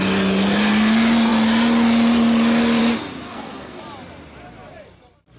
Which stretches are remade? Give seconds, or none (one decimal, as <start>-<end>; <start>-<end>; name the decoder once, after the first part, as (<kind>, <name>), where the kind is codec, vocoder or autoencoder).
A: 3.3-3.8 (codec, SNAC)